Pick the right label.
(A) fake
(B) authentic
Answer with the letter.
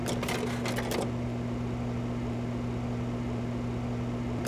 B